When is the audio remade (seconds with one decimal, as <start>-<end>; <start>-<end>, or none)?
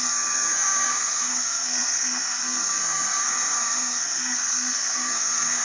0.0-5.6